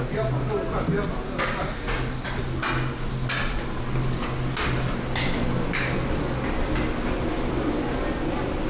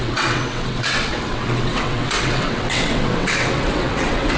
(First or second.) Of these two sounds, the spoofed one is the second